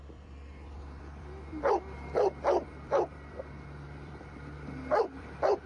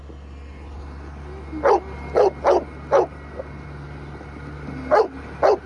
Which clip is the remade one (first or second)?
first